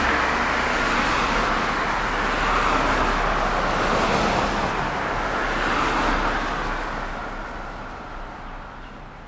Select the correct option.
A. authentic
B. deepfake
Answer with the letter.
A